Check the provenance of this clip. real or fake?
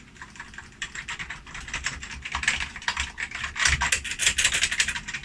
real